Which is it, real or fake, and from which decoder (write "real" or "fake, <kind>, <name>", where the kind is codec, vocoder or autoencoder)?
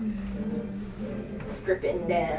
real